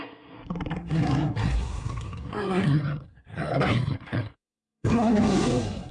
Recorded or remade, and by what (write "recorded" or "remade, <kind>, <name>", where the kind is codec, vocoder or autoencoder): remade, codec, SNAC